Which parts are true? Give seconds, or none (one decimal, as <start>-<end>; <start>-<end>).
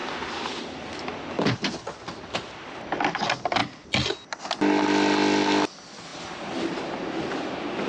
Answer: 1.5-7.9